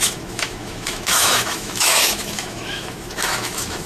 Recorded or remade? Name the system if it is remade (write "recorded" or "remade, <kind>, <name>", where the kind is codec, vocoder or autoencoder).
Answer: remade, autoencoder, DAC-VAE